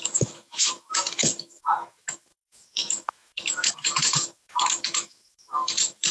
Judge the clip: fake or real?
fake